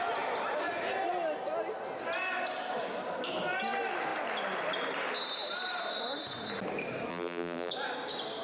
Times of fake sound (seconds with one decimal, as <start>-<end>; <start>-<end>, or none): 7.1-7.7